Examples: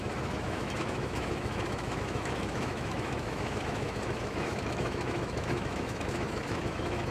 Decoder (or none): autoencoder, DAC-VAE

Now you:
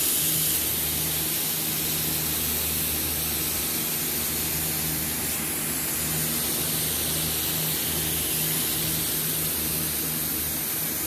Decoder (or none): none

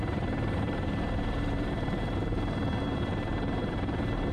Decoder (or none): vocoder, BigVGAN v2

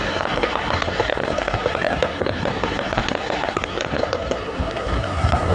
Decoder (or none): codec, SNAC